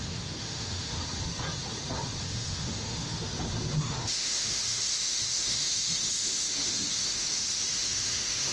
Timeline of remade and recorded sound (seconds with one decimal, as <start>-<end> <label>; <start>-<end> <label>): 0.0-1.0 remade; 1.0-2.2 recorded; 2.2-3.3 remade; 3.3-3.8 recorded; 3.8-8.5 remade